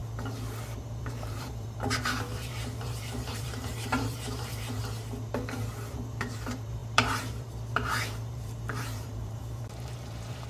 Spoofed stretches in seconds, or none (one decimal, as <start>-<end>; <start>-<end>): 0.8-4.8; 5.9-10.5